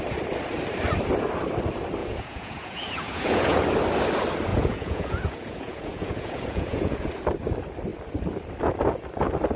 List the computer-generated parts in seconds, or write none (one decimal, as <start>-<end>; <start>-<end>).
2.0-3.6; 4.5-7.1